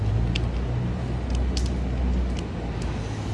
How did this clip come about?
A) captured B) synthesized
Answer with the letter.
A